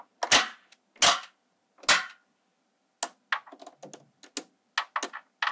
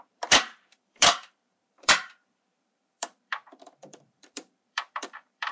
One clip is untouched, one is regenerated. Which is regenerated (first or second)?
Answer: second